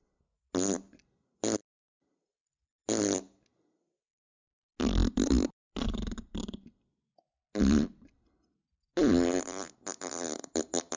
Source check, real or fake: real